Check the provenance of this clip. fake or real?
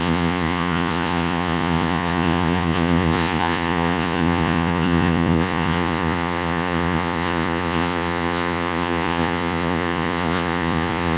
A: fake